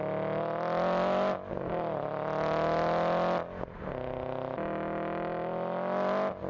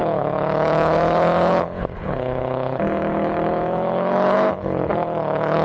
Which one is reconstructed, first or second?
second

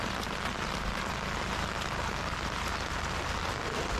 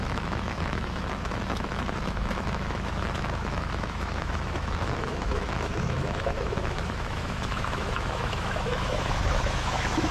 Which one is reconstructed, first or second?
second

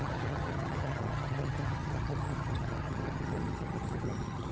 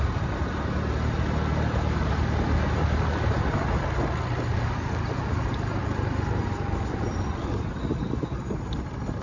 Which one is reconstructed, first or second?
first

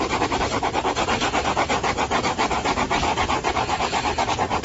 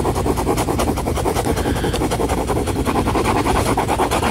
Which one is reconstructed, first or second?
first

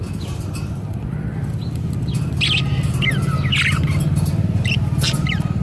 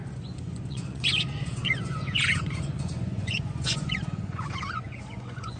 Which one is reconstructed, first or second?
second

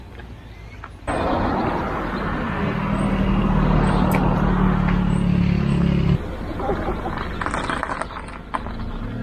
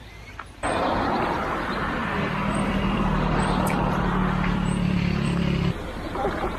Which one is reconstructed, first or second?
second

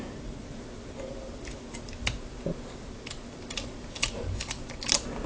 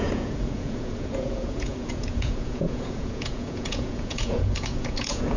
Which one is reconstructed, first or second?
second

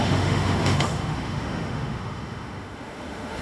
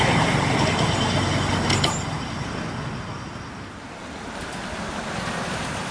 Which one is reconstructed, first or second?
first